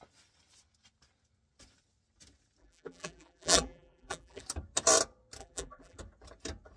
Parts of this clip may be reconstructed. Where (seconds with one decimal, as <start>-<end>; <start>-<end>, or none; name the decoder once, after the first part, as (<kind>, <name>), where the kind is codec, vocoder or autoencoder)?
2.6-4.4 (vocoder, BigVGAN v2); 5.4-6.0